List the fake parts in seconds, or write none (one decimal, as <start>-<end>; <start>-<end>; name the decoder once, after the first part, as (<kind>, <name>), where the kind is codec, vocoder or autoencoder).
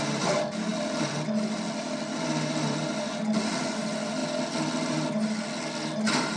none